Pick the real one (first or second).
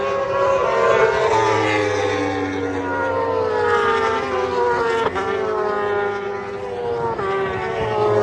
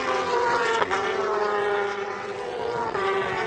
first